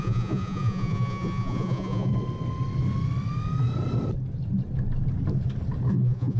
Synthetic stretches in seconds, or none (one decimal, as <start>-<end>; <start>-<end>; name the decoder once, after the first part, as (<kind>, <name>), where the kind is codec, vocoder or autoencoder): 0.0-2.1 (vocoder, Vocos); 5.9-6.4